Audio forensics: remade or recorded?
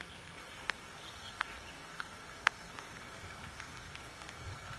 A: remade